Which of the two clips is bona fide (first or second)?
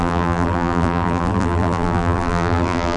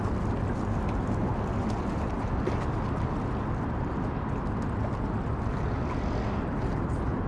second